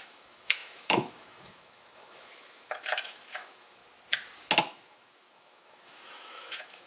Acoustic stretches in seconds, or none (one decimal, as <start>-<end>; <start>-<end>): 3.8-4.6